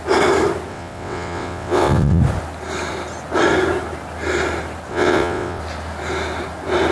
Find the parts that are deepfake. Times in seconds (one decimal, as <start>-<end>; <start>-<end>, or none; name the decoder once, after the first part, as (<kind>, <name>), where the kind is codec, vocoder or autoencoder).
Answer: 0.7-2.2 (vocoder, WaveNeXt); 4.9-5.6